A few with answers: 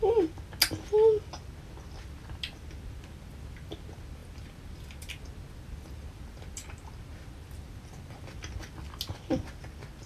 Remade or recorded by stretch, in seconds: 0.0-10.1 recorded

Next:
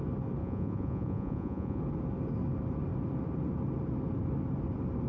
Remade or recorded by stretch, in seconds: 0.0-0.4 recorded; 0.4-1.8 remade; 1.8-5.1 recorded

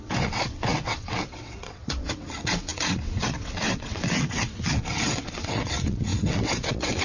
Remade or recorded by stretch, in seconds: 0.0-7.0 remade

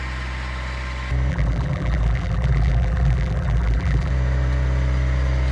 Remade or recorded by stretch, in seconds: 0.0-1.3 recorded; 1.3-4.1 remade; 4.1-5.5 recorded

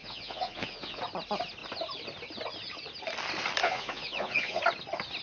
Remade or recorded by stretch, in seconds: 0.0-1.0 remade; 1.0-3.6 recorded; 3.6-4.6 remade; 4.6-5.2 recorded

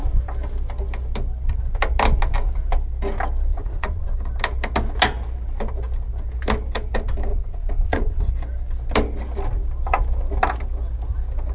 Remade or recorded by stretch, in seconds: 0.0-3.5 recorded; 3.5-4.1 remade; 4.1-7.3 recorded; 7.3-8.3 remade; 8.3-11.5 recorded